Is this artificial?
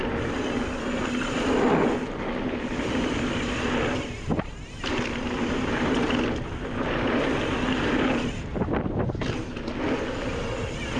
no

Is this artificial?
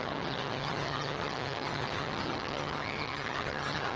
yes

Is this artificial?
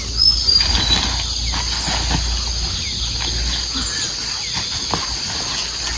no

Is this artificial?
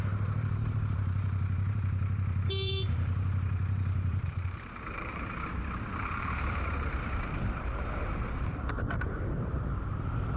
yes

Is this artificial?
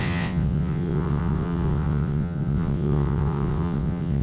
yes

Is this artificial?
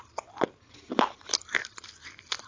no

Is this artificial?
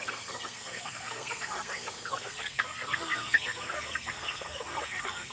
yes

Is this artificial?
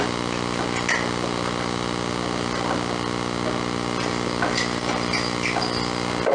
no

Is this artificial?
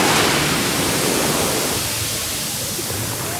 no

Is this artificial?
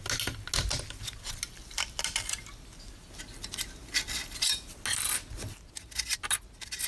no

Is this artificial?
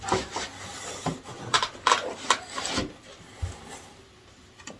no